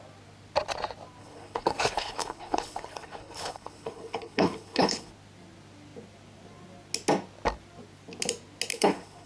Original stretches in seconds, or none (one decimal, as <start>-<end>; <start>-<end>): 0.0-1.2; 5.1-8.7

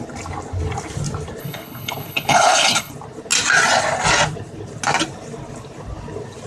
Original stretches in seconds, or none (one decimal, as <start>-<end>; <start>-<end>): 0.0-1.4; 2.9-6.5

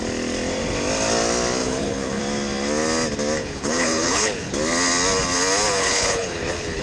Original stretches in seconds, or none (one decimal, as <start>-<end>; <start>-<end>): 0.0-1.6; 2.2-3.4; 4.5-5.8

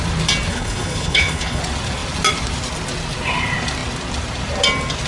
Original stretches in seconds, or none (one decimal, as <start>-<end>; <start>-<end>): 0.0-0.5; 1.6-5.1

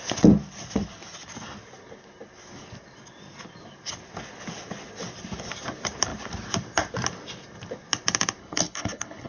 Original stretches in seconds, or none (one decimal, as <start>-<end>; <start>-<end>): 0.0-8.4

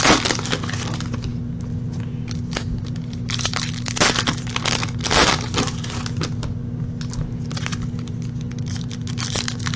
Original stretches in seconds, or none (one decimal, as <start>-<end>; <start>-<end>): 0.0-9.8

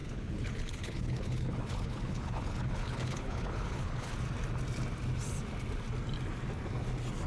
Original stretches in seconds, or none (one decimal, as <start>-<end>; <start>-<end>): 4.1-7.3

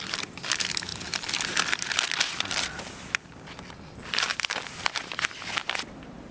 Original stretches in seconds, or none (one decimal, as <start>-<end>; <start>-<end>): 0.0-6.3